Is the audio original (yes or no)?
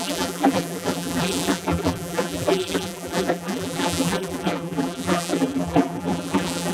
no